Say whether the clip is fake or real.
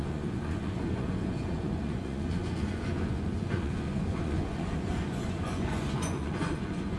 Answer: fake